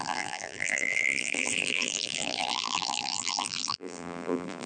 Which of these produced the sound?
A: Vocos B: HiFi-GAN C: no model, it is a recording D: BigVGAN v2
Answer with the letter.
D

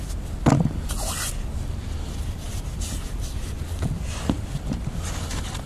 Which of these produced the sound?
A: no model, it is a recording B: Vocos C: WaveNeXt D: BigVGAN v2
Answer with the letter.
A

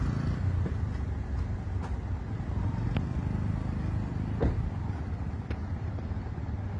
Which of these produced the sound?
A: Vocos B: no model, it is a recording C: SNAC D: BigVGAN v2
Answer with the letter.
B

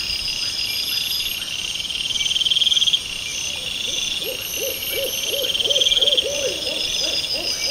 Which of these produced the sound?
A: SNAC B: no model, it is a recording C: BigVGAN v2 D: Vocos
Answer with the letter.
B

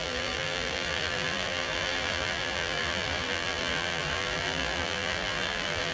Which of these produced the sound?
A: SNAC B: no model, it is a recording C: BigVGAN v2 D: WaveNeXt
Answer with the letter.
C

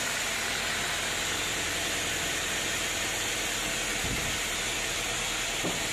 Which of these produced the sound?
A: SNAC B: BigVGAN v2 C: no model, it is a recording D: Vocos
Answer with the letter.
C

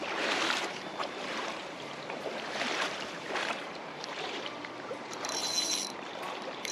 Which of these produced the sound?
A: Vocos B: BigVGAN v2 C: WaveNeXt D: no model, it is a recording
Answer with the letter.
B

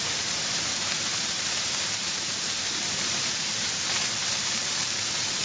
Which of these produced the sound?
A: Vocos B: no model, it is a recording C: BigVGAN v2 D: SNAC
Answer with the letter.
C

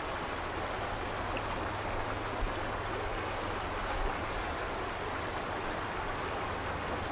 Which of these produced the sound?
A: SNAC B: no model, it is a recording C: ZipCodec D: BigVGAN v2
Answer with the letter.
B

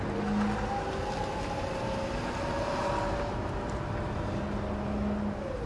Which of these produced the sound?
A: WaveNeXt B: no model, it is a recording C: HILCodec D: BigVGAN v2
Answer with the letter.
B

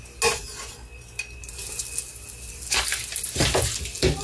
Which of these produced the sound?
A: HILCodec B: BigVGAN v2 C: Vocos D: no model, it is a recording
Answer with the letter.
D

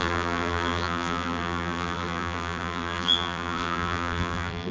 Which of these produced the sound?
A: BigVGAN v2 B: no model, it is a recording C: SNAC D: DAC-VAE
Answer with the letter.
A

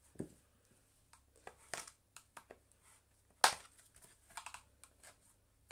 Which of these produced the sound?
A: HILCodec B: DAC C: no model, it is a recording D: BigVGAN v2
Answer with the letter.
C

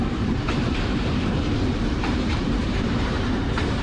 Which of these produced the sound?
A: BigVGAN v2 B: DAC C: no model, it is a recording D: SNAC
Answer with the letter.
A